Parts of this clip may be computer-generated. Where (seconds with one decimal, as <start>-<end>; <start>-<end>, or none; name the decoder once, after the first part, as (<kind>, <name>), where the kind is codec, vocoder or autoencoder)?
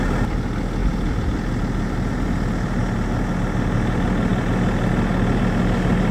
none